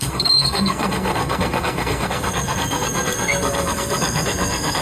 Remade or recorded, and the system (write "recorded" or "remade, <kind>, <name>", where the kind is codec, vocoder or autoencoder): remade, codec, SNAC